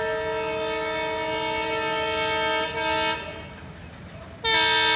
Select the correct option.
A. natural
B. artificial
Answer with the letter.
A